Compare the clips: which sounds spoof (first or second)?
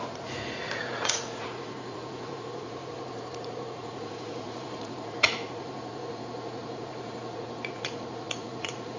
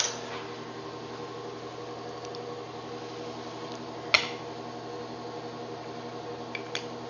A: first